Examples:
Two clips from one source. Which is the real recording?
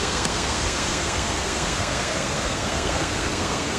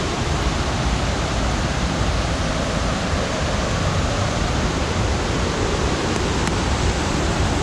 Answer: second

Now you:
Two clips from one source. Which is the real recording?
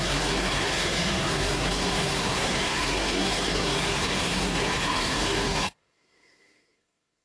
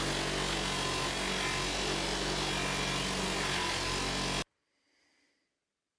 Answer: second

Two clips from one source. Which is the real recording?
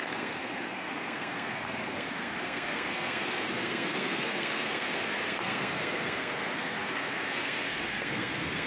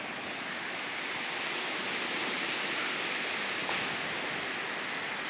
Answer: second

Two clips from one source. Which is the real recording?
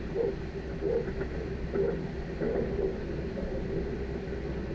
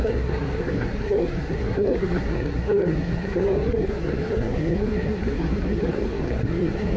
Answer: first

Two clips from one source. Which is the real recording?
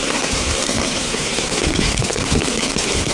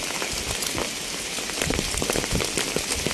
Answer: second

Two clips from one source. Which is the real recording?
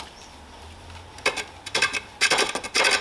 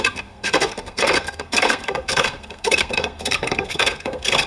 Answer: first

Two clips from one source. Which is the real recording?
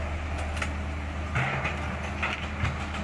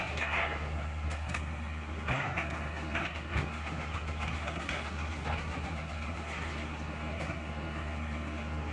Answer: first